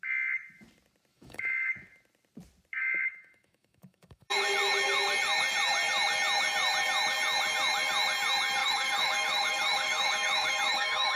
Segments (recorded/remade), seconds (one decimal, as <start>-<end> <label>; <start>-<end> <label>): 0.0-1.1 recorded; 1.1-1.7 remade; 1.7-2.8 recorded; 2.8-4.3 remade; 4.3-8.6 recorded; 8.6-11.2 remade